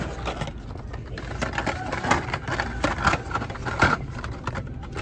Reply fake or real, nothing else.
real